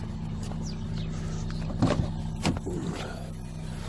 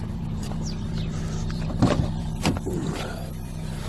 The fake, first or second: second